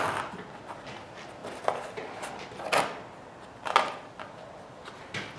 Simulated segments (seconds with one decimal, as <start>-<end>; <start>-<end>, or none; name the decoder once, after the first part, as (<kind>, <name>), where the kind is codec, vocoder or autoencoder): none